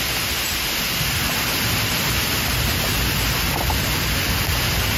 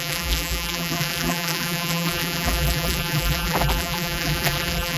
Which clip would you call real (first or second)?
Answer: first